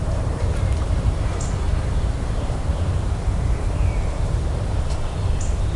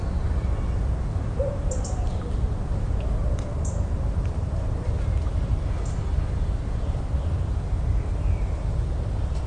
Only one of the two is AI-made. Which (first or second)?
first